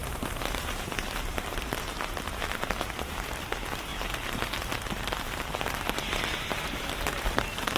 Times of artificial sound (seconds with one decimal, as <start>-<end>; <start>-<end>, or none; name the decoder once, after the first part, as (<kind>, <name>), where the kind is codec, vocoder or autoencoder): 0.0-3.9 (vocoder, BigVGAN v2); 5.9-7.8

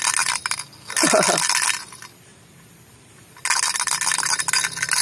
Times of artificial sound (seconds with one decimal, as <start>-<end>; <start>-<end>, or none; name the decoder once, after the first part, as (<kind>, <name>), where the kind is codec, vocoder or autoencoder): none

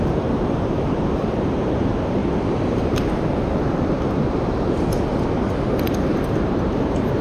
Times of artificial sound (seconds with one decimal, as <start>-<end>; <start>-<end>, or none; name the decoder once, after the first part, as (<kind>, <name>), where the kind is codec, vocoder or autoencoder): 0.0-2.2 (vocoder, BigVGAN v2); 2.8-5.1; 6.0-7.2

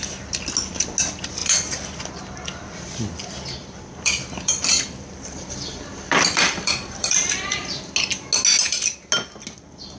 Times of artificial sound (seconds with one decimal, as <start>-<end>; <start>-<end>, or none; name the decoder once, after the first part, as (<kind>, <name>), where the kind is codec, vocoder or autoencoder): 1.4-2.1 (vocoder, BigVGAN v2); 2.5-3.2; 3.6-7.8